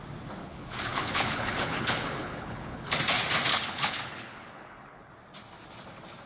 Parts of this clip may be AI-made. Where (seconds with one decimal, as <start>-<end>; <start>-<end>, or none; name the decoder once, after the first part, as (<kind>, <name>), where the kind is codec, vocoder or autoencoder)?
0.4-3.0 (codec, HILCodec); 3.5-5.1